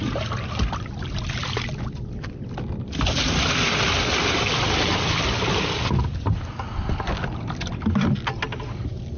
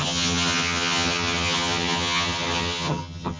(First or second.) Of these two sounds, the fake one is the second